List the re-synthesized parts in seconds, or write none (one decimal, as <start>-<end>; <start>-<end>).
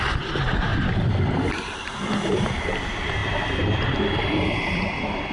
0.0-0.7; 2.3-5.3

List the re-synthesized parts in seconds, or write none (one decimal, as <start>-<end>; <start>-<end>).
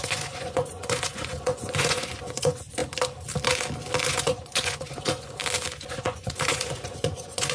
0.0-2.8; 4.1-5.4; 5.9-7.5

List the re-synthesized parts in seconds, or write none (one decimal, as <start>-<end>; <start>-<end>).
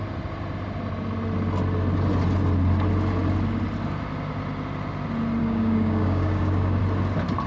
5.4-6.8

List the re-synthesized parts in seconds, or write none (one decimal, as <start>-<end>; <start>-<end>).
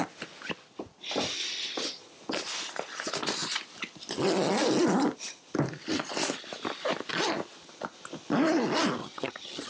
9.0-9.7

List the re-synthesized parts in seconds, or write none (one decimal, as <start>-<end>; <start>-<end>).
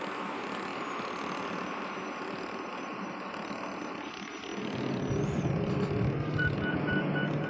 none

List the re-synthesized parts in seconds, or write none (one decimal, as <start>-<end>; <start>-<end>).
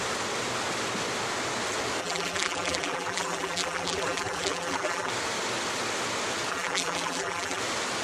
2.0-5.1; 6.5-7.6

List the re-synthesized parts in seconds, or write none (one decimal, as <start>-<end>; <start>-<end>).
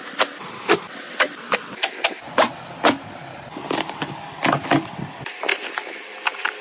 none